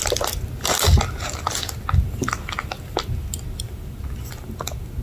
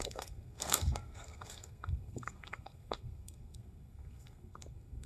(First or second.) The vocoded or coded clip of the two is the second